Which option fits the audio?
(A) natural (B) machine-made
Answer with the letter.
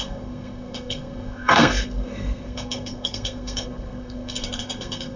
B